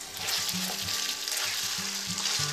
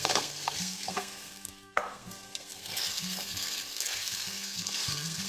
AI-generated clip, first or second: second